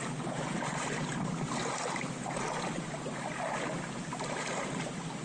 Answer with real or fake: real